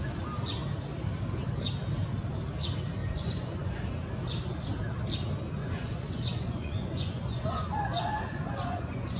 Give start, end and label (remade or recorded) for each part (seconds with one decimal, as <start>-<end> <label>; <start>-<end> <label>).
0.0-3.0 recorded; 3.0-3.7 remade; 3.7-5.6 recorded; 5.6-9.2 remade